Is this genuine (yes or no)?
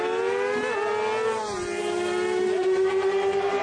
yes